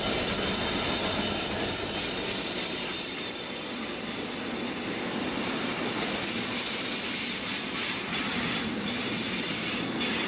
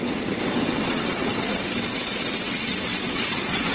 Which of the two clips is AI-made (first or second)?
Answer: second